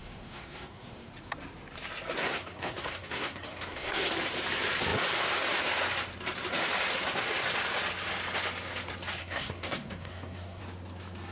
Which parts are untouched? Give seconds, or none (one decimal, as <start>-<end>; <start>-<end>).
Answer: 1.1-2.2; 4.1-9.2; 10.6-11.3